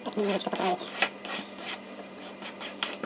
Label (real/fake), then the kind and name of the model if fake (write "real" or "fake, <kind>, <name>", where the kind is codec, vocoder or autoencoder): fake, vocoder, BigVGAN v2